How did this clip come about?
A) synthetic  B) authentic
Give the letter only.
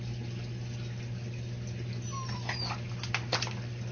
B